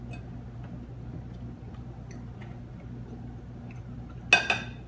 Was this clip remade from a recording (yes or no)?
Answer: no